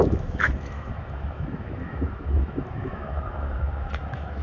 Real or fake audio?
fake